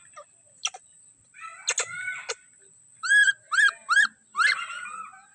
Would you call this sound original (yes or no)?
yes